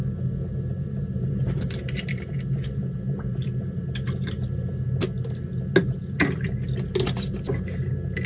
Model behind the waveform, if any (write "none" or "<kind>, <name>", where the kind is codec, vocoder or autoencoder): none